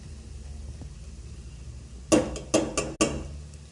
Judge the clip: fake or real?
real